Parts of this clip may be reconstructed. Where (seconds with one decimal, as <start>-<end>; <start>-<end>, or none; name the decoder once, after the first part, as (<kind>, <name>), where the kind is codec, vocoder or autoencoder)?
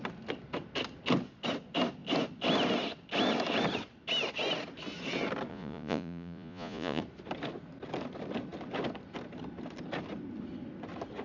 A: 5.5-7.0 (vocoder, Vocos)